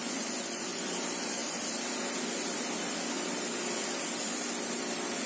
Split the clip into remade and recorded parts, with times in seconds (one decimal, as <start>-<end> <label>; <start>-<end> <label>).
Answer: 0.0-0.8 remade; 0.8-5.3 recorded